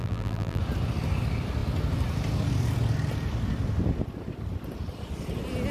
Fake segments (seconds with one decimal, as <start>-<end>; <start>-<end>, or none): 0.0-0.6